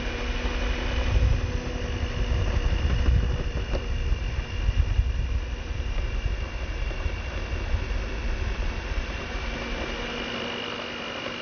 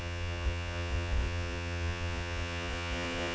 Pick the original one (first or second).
first